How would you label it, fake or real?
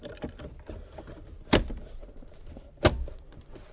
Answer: real